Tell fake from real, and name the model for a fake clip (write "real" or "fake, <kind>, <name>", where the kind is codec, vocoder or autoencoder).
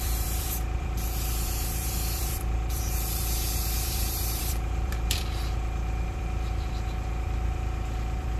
fake, vocoder, BigVGAN v2